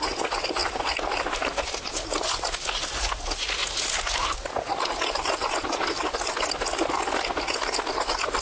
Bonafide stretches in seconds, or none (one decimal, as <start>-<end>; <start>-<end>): 0.0-0.6; 1.8-8.4